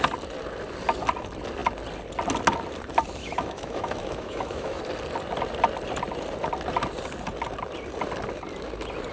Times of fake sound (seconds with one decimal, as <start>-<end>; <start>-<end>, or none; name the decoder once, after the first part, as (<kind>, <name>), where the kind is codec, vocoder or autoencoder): 3.2-4.8 (autoencoder, DAC-VAE)